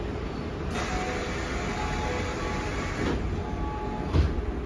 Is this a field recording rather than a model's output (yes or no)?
yes